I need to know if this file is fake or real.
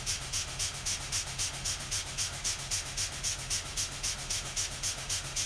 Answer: fake